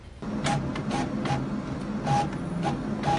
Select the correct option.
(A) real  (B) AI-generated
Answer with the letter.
A